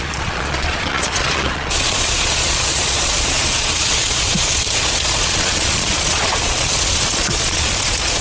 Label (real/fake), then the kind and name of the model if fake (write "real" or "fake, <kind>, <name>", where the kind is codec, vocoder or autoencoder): fake, vocoder, Vocos